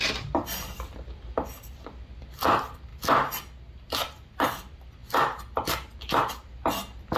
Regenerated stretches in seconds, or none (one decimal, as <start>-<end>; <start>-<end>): 0.0-2.9; 4.3-5.0; 5.7-6.5